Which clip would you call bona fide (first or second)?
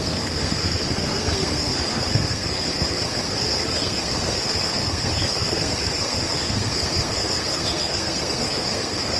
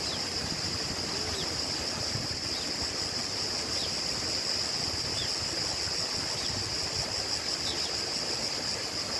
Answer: second